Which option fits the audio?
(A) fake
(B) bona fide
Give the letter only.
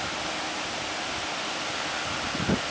B